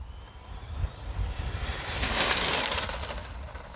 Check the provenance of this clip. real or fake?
real